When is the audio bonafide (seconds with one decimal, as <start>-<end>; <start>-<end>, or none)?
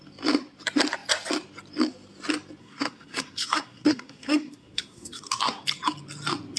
0.0-2.6; 5.6-6.6